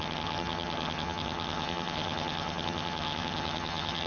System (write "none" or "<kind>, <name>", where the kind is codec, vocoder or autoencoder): vocoder, HiFi-GAN